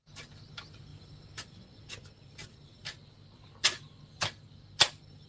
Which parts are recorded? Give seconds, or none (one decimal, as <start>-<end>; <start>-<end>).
0.0-5.3